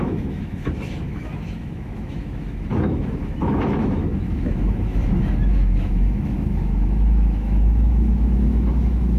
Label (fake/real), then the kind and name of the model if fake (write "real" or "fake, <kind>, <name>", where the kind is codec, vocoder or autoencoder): fake, autoencoder, DAC-VAE